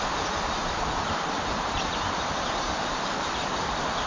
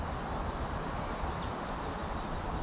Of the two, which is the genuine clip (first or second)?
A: second